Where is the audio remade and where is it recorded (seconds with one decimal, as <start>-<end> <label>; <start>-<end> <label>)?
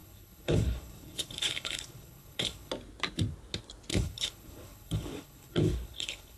0.0-2.7 remade; 2.7-3.9 recorded; 3.9-6.4 remade